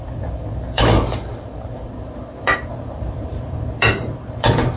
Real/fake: fake